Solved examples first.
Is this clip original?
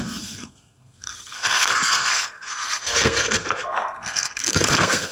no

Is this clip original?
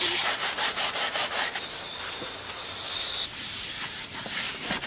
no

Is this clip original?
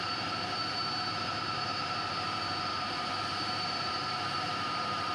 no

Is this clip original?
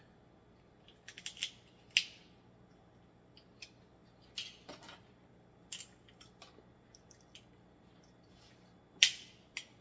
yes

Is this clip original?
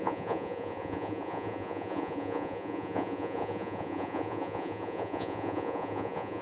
no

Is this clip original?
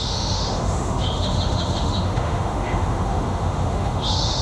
no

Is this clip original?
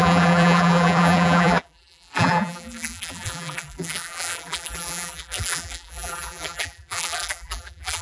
no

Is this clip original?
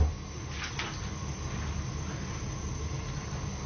yes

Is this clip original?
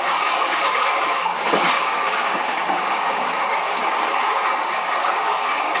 no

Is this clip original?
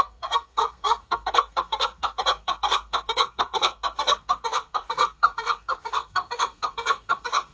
no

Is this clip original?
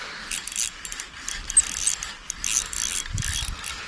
yes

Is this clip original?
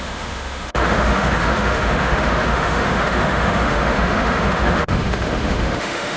no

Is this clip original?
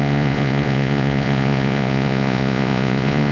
no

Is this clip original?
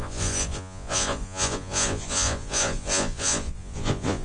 no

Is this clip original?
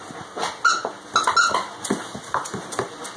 yes